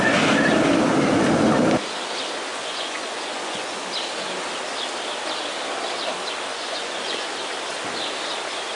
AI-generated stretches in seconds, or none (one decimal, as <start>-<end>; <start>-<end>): 2.5-3.8; 6.5-7.3